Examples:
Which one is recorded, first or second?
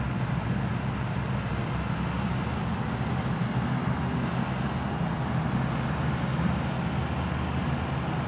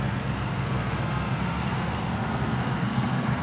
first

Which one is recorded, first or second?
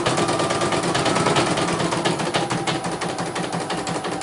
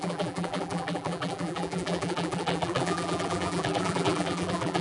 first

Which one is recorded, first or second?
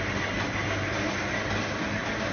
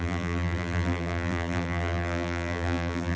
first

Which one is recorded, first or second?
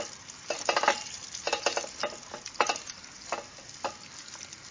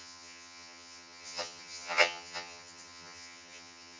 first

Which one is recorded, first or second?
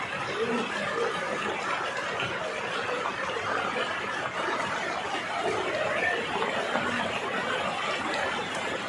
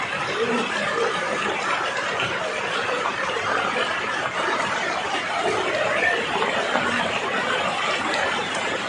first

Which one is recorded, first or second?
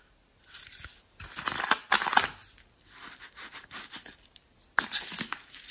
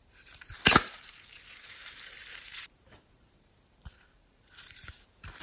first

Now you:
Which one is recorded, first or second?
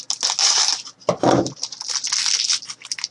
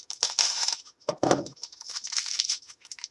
first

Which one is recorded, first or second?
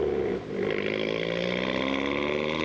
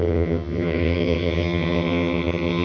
first